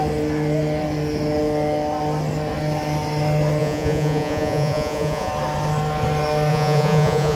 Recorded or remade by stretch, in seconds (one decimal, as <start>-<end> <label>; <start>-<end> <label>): 0.0-3.6 recorded; 3.6-5.3 remade; 5.3-6.5 recorded; 6.5-7.4 remade